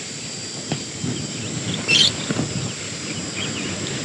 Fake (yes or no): no